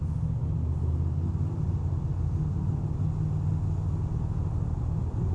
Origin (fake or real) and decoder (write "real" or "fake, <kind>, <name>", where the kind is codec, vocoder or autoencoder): real